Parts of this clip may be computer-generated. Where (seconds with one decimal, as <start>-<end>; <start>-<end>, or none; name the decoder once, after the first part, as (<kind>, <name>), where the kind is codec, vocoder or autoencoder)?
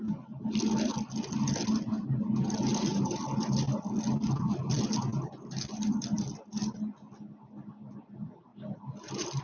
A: none